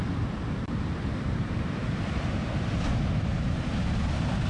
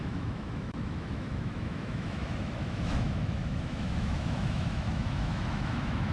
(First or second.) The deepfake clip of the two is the second